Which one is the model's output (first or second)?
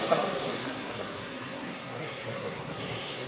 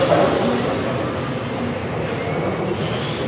first